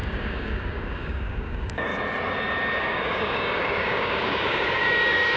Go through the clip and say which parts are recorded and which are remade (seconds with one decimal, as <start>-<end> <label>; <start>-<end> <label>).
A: 0.0-1.9 remade; 1.9-2.8 recorded; 2.8-5.4 remade